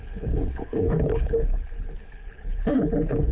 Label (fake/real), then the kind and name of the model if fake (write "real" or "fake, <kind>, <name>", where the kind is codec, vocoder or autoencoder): fake, codec, HILCodec